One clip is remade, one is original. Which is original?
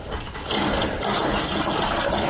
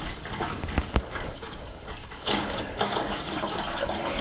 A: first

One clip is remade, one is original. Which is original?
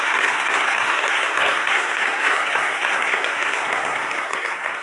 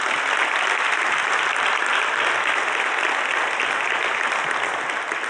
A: second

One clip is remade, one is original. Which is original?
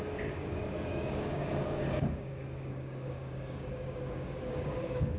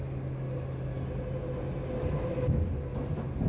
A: second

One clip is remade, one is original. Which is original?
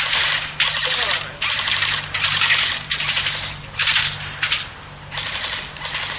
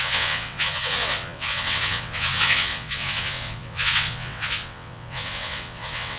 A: first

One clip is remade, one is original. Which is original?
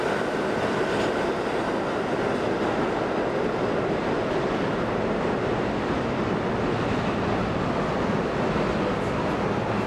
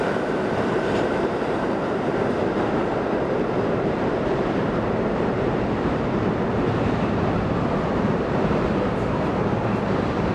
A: first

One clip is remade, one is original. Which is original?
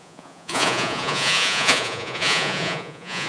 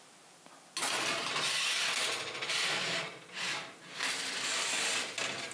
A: second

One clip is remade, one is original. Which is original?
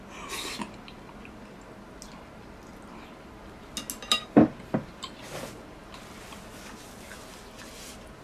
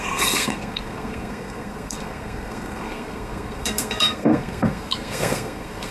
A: first